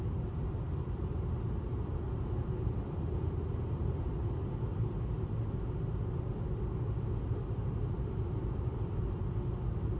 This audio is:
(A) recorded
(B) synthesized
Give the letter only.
A